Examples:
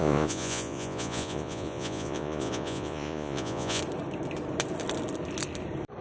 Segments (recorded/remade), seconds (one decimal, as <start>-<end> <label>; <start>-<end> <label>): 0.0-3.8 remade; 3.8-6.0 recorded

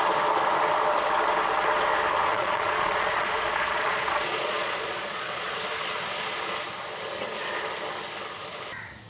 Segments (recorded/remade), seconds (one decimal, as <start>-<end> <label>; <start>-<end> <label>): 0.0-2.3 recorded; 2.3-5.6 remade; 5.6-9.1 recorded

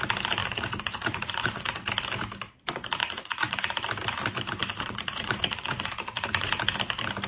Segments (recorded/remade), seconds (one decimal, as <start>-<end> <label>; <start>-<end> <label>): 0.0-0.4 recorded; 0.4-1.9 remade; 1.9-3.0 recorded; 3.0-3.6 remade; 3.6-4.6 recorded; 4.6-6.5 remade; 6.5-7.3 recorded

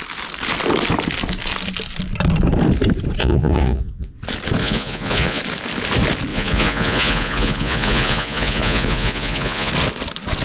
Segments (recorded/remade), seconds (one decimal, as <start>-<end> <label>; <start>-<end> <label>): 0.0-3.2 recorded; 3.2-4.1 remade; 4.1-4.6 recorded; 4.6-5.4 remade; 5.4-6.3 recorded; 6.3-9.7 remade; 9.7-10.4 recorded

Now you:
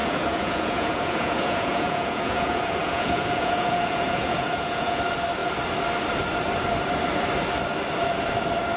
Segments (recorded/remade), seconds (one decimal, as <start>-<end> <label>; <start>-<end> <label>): 0.0-5.0 remade; 5.0-8.8 recorded

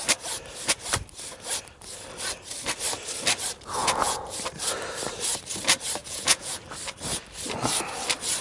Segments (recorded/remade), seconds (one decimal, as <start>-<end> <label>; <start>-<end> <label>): 0.0-3.8 recorded; 3.8-4.3 remade; 4.3-6.0 recorded; 6.0-6.6 remade; 6.6-8.4 recorded

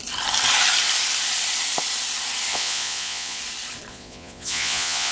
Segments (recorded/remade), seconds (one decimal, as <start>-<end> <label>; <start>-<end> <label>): 0.0-2.5 recorded; 2.5-3.4 remade; 3.4-3.9 recorded; 3.9-5.1 remade